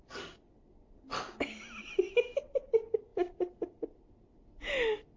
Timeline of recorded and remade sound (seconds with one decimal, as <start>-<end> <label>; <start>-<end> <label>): 0.0-5.2 recorded